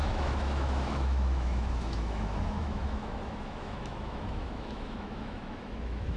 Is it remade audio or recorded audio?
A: remade